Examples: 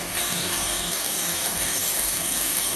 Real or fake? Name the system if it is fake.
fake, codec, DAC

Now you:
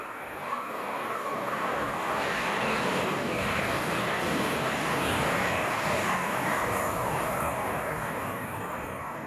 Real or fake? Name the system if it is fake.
fake, codec, DAC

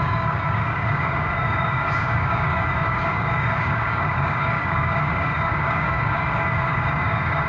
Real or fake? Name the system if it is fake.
fake, codec, DAC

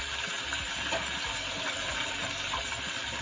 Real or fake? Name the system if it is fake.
real